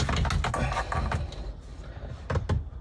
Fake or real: real